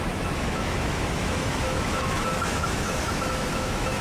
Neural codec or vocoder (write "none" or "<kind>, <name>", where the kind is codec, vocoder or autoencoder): autoencoder, DAC-VAE